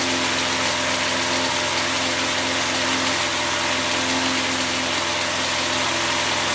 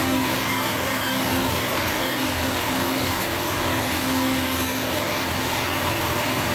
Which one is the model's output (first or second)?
second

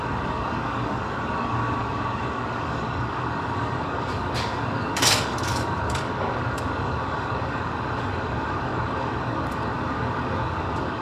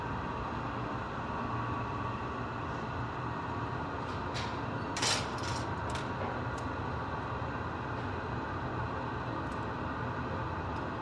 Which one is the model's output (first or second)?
first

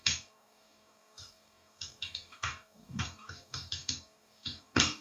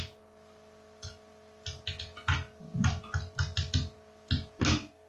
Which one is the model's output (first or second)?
first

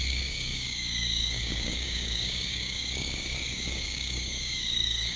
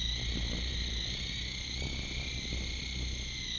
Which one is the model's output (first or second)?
first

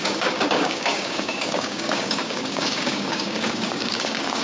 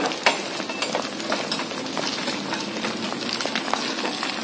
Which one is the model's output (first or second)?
first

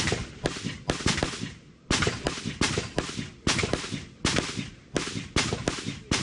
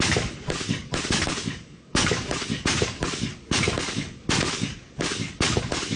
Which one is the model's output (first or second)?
second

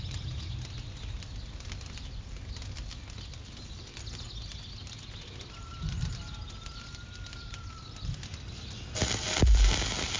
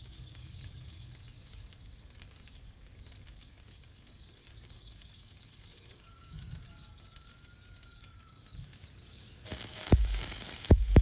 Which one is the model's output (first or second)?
second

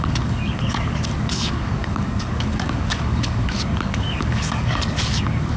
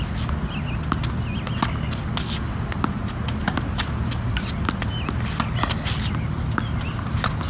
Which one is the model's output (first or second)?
first